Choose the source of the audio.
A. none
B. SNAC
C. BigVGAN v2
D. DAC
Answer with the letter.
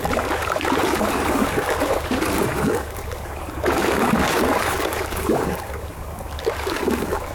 D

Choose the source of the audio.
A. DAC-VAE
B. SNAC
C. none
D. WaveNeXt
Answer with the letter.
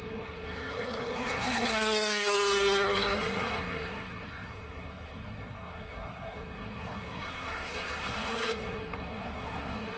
B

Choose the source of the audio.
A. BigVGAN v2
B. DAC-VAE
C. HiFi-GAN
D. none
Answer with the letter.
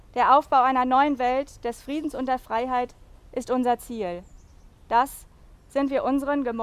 D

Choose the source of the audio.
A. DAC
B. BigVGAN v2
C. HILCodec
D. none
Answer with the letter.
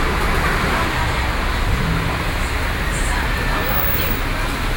D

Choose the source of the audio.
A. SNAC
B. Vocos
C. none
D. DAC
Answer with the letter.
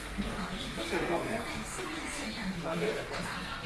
A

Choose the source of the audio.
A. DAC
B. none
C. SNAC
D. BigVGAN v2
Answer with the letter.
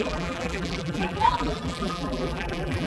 D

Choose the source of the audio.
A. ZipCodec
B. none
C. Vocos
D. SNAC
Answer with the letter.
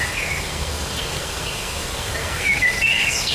D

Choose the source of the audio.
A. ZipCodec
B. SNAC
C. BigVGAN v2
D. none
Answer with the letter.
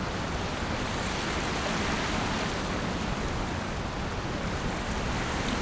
D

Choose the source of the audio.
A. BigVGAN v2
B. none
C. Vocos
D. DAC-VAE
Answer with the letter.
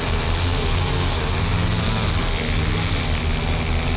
B